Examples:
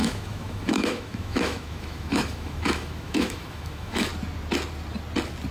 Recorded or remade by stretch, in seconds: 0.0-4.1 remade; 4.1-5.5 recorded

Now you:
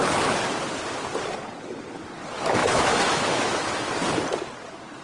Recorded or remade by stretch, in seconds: 0.0-2.6 recorded; 2.6-3.9 remade; 3.9-5.0 recorded

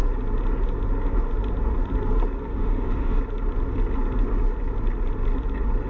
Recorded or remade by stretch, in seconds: 0.0-2.5 recorded; 2.5-3.2 remade; 3.2-5.9 recorded

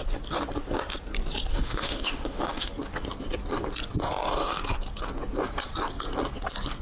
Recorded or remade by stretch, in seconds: 0.0-1.5 recorded; 1.5-2.7 remade; 2.7-6.8 recorded

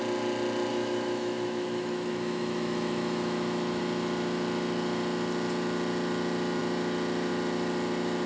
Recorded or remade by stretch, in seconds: 0.0-0.7 recorded; 0.7-3.8 remade; 3.8-8.3 recorded

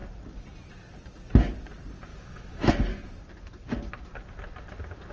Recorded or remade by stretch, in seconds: 0.0-2.1 recorded; 2.1-2.7 remade; 2.7-5.1 recorded